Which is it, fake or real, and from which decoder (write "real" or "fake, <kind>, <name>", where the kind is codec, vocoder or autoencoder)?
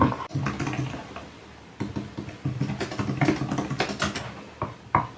real